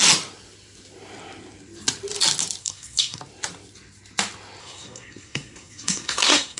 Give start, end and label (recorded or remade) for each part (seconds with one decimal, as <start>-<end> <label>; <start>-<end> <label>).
0.0-2.6 recorded; 2.6-3.2 remade; 3.2-4.6 recorded; 4.6-6.6 remade